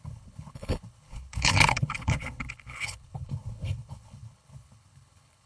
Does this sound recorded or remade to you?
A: remade